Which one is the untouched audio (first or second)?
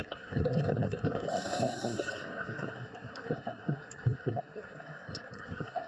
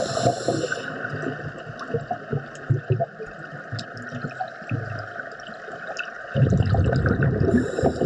second